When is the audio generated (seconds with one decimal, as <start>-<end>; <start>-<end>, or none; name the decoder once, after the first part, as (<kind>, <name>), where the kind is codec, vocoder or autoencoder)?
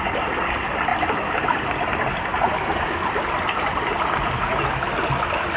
none